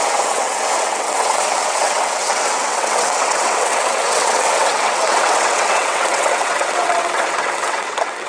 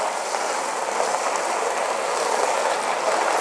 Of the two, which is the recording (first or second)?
second